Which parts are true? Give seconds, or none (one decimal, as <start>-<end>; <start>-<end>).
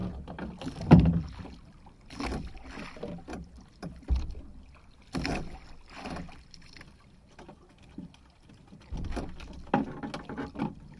0.0-11.0